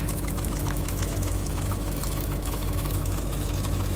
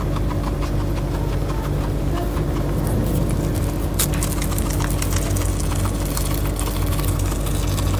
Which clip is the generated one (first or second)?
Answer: first